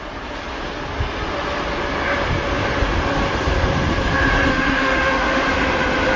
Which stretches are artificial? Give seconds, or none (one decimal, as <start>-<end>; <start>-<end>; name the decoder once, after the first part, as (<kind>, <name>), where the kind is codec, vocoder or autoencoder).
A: 4.5-5.4 (autoencoder, DAC-VAE)